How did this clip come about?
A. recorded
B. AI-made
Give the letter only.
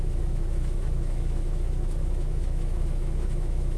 B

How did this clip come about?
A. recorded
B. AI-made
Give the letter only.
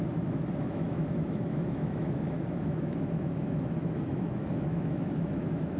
B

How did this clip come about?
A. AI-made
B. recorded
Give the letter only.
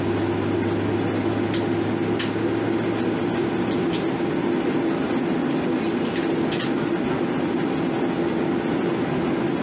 B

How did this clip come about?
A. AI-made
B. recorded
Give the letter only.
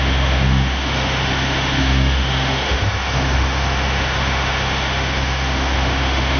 A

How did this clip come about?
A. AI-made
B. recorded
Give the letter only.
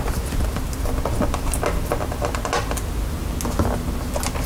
B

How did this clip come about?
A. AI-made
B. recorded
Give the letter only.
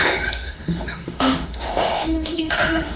A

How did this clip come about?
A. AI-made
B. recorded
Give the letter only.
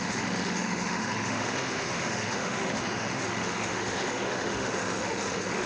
A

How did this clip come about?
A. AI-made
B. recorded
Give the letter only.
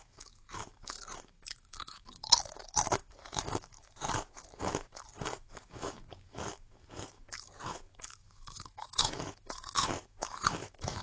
A